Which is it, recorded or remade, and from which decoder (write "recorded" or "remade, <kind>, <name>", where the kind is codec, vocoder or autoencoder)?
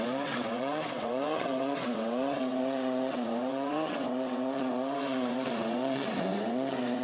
remade, vocoder, WaveNeXt